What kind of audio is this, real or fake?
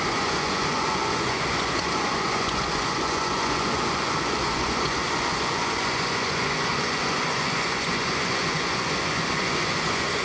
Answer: fake